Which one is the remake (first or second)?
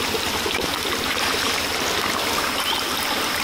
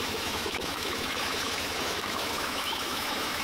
second